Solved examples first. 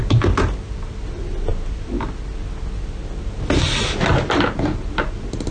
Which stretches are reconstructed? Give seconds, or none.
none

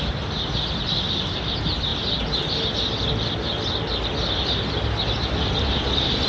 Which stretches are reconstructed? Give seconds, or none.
none

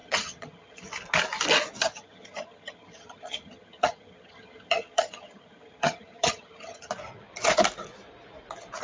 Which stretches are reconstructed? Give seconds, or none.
0.0-0.9 (vocoder, HiFi-GAN); 1.9-6.9

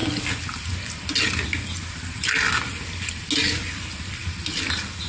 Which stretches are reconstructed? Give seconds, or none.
none

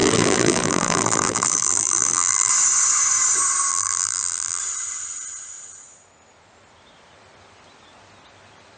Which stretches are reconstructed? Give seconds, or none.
0.0-2.5 (vocoder, BigVGAN v2); 3.7-4.6

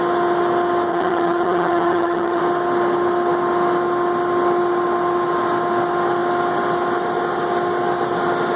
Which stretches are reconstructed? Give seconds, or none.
0.9-2.4 (vocoder, HiFi-GAN)

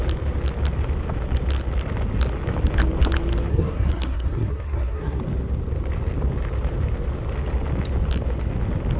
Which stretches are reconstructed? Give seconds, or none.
3.5-5.2 (codec, SNAC)

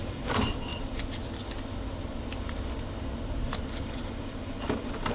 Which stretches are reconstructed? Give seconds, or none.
0.0-0.7 (vocoder, BigVGAN v2); 3.8-5.1